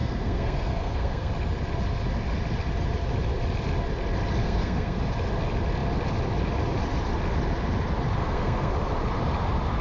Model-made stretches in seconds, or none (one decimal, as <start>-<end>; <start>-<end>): 0.0-1.3; 4.4-5.0; 8.2-8.7